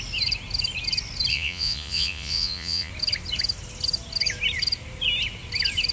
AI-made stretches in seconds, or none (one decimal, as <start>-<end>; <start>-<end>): 1.3-2.9